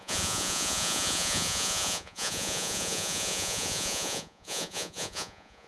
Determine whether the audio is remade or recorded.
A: remade